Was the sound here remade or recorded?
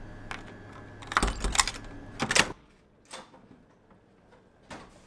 recorded